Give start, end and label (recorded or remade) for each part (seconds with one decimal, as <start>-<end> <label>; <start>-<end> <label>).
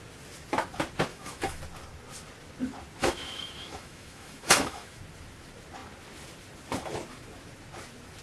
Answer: 0.0-1.1 recorded; 1.1-1.6 remade; 1.6-3.0 recorded; 3.0-5.0 remade; 5.0-8.2 recorded